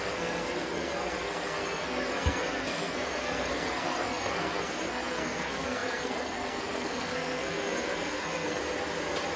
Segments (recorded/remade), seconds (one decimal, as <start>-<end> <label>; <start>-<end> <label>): 0.0-8.6 remade; 8.6-9.4 recorded